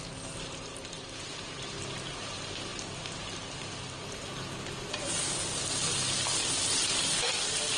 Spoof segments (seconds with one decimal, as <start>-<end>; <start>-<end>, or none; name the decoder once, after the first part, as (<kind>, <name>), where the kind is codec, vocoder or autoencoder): none